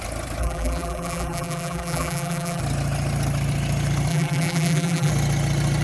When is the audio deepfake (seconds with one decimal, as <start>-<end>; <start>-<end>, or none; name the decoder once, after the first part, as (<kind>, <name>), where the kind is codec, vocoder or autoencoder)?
0.4-2.6 (vocoder, BigVGAN v2); 4.1-5.1